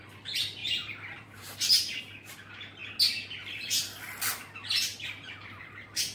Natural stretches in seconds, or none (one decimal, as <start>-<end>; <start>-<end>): 0.0-0.6; 2.0-6.1